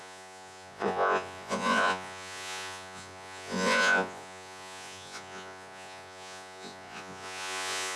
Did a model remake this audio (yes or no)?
yes